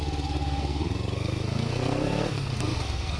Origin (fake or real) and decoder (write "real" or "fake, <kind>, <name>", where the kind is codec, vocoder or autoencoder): fake, codec, SNAC